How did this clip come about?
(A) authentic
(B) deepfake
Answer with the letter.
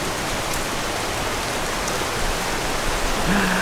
A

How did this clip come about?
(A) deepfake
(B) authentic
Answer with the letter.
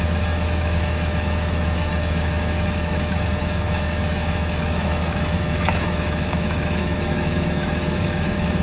A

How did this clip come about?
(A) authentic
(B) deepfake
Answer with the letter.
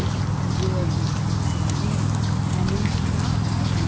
A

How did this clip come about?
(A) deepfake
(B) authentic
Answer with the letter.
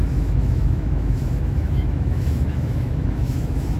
A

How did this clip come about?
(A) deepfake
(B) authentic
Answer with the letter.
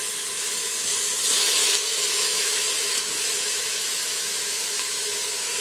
A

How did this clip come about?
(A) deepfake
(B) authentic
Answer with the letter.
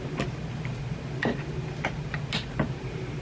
B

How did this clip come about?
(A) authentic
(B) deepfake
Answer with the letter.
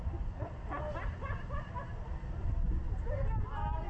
A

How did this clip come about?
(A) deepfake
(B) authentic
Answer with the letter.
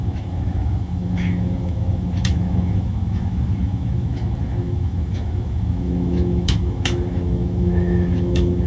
A